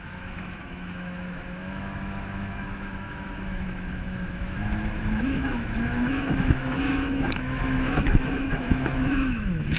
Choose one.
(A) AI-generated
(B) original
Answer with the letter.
A